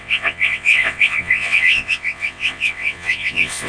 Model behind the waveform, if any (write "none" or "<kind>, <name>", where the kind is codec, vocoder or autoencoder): vocoder, WaveNeXt